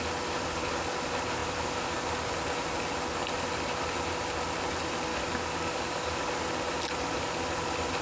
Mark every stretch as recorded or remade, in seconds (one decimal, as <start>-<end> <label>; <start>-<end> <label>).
0.0-5.1 recorded; 5.1-6.3 remade; 6.3-8.0 recorded